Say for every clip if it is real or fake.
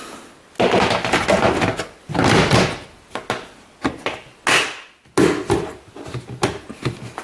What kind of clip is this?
real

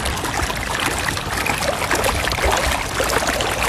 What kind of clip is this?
real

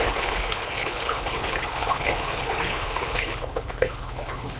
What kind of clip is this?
fake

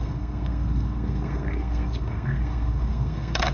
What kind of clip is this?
fake